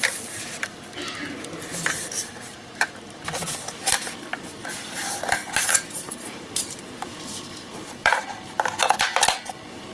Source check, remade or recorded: remade